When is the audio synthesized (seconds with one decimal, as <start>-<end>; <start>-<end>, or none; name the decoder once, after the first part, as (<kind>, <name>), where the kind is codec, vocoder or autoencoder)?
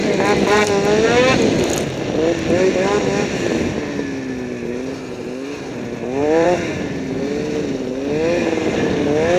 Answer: 6.2-6.8 (vocoder, BigVGAN v2)